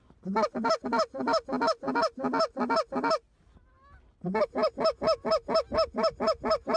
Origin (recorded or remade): recorded